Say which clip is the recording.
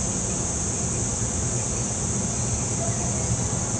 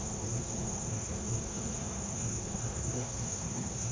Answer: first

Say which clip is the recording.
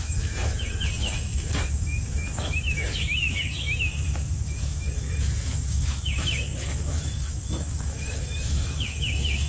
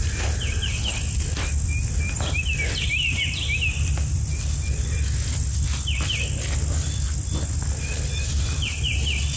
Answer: second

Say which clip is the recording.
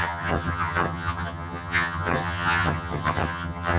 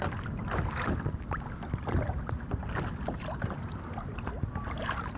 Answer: second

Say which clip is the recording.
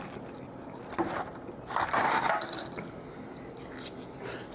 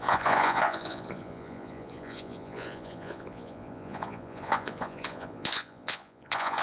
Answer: first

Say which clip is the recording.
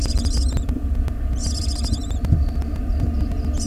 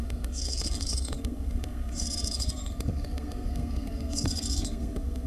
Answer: first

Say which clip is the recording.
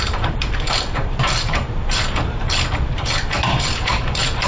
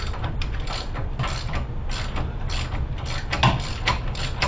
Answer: second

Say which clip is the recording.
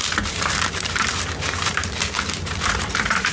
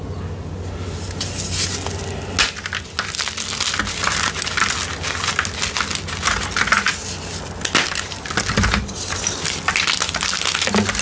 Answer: second